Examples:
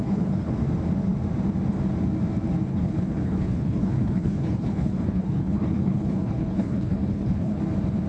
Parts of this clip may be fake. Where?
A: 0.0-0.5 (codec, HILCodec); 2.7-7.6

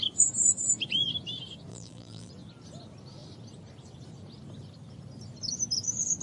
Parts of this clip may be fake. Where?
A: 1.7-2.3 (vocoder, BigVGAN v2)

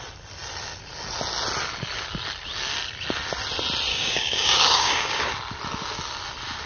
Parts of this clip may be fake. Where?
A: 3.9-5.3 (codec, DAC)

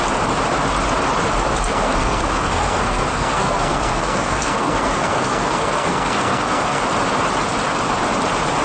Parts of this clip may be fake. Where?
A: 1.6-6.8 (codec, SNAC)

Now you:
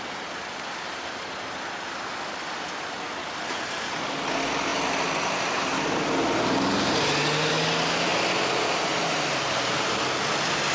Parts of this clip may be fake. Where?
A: none

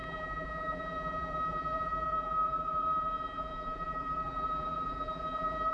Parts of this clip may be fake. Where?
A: 0.0-5.7 (vocoder, BigVGAN v2)

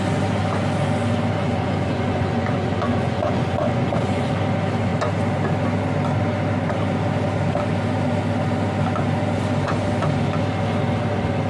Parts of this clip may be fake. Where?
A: 1.4-4.3 (vocoder, Vocos)